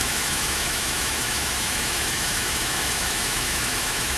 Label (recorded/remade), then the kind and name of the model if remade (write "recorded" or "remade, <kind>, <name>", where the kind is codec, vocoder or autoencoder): remade, autoencoder, DAC-VAE